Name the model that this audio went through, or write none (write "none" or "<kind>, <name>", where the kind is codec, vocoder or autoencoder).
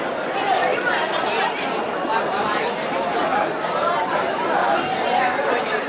vocoder, BigVGAN v2